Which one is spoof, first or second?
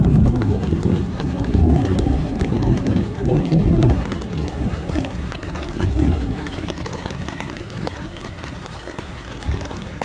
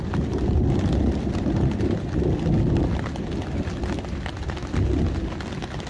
first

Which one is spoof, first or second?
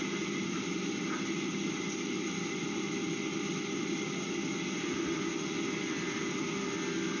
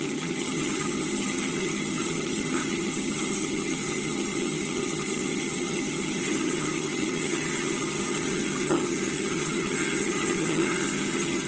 second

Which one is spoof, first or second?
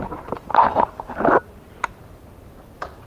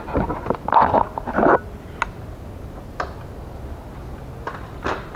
first